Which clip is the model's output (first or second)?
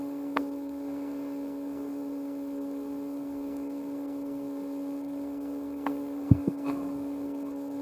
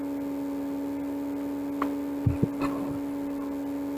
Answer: first